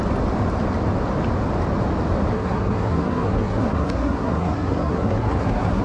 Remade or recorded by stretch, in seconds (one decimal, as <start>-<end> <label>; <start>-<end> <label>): 0.0-2.3 recorded; 2.3-5.8 remade